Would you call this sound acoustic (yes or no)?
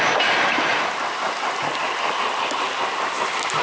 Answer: yes